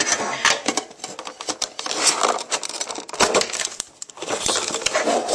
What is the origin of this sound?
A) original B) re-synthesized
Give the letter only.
A